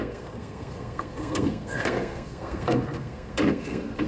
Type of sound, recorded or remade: remade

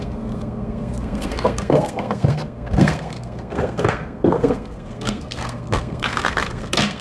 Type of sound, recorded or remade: remade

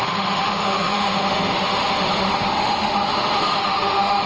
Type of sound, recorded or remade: remade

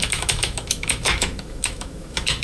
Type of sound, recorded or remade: remade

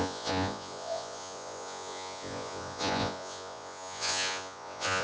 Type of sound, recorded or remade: remade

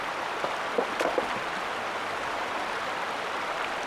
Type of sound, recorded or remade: recorded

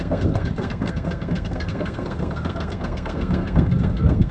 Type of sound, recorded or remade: remade